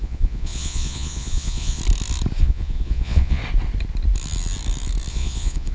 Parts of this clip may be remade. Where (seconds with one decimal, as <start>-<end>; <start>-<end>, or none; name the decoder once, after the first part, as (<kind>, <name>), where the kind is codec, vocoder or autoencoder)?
0.0-1.8 (vocoder, Vocos); 2.4-3.4; 5.1-5.7